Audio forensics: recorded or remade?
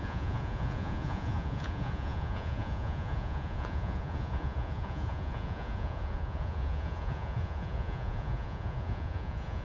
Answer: remade